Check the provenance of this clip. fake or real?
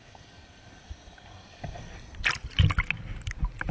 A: real